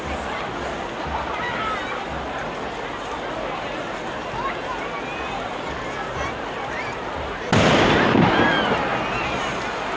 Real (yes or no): yes